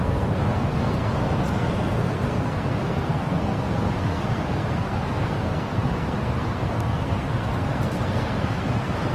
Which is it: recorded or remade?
remade